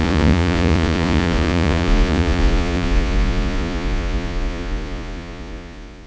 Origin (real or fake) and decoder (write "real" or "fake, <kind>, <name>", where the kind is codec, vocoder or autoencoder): fake, vocoder, Vocos